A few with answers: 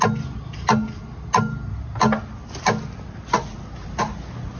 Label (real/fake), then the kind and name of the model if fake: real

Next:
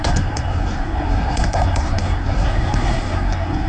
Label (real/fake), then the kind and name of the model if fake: fake, codec, SNAC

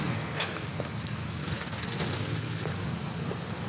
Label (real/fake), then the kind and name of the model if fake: fake, codec, SNAC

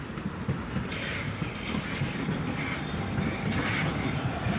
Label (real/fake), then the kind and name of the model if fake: real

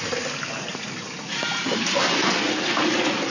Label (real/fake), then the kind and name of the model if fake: real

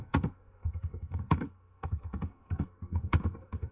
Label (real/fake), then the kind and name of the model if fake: fake, codec, SNAC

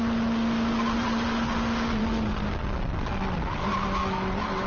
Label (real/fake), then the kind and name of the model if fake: real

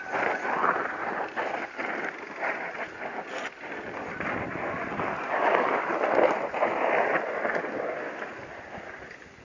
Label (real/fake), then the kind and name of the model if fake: real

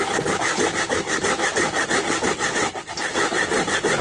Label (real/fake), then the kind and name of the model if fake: real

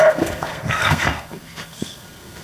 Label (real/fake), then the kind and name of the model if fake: fake, codec, SNAC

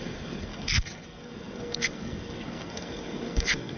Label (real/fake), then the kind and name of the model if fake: fake, codec, SNAC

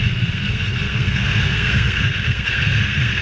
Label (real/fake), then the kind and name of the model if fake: fake, codec, SNAC